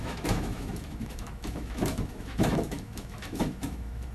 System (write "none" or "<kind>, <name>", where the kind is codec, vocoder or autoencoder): autoencoder, DAC-VAE